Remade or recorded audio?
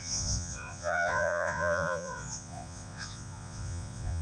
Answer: remade